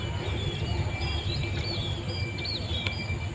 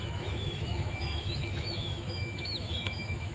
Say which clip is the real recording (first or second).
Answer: first